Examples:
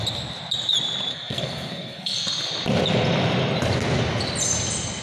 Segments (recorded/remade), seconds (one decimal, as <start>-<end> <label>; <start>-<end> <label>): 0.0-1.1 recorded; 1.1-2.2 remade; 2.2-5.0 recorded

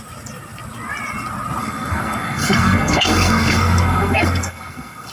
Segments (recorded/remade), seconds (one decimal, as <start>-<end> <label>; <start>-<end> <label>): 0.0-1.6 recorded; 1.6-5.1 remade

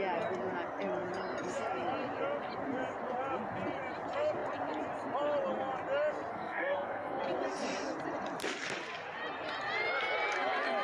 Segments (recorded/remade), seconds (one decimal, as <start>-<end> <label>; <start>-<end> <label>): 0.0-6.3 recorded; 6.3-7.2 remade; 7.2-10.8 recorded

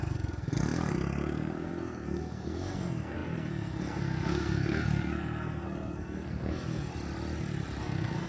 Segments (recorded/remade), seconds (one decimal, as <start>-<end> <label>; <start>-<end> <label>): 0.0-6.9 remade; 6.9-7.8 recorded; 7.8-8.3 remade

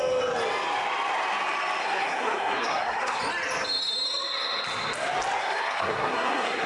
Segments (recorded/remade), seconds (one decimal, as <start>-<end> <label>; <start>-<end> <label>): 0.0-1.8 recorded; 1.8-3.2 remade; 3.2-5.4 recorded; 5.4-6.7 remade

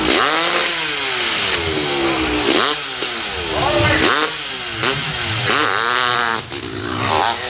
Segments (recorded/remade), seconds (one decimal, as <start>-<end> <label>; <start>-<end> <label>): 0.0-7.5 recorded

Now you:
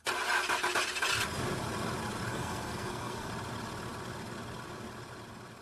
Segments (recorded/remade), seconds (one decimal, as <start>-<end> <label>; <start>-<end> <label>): 0.0-2.3 recorded; 2.3-3.3 remade; 3.3-5.6 recorded